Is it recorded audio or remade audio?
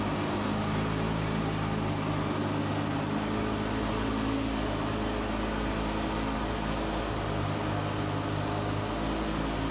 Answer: recorded